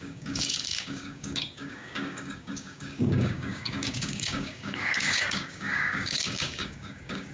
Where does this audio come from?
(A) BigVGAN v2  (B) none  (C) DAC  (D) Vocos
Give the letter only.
C